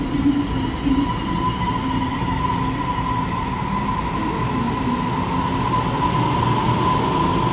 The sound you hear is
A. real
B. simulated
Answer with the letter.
A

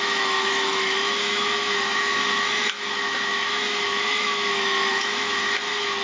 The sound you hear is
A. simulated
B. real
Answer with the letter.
A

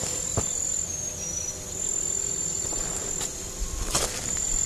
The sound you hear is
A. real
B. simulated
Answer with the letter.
B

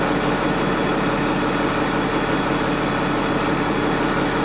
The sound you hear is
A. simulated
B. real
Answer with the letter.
B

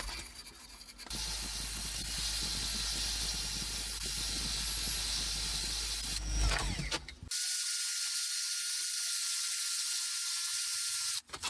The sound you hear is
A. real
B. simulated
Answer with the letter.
A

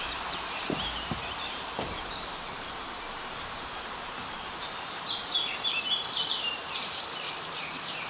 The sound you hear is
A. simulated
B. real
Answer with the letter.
A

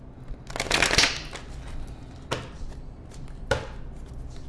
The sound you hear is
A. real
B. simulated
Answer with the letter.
A